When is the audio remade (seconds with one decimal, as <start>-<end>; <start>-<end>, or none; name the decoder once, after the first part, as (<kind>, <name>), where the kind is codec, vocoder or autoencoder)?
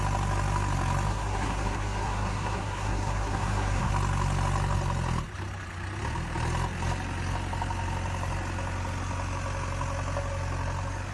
1.1-3.9 (codec, SNAC)